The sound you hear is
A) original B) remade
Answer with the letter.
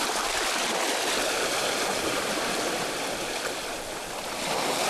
A